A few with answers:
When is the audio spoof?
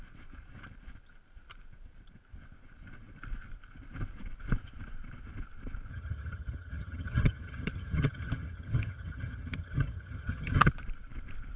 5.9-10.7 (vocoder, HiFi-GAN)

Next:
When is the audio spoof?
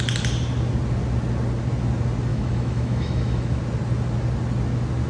2.3-3.6 (autoencoder, DAC-VAE)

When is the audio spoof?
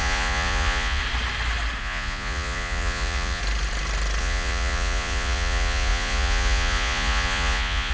0.0-1.0 (vocoder, Vocos); 1.8-3.4; 4.2-7.9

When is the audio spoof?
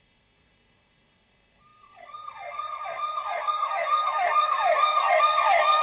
0.0-5.8 (codec, SNAC)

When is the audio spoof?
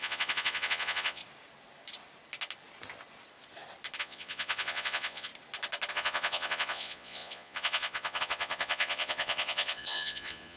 0.0-1.2 (vocoder, Vocos); 4.0-5.3; 5.9-10.6